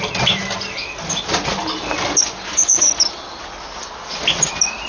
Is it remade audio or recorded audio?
recorded